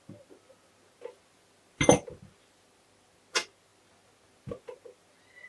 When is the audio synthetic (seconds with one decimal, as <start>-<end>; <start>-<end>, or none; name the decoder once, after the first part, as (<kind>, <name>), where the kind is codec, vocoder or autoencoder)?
none